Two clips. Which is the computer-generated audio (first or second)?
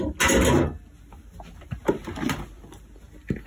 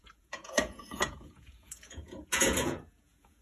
second